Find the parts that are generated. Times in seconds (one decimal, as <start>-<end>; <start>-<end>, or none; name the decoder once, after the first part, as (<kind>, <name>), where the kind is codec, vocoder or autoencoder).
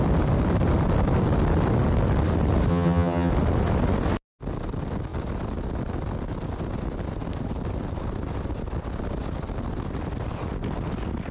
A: 2.7-3.3 (vocoder, HiFi-GAN)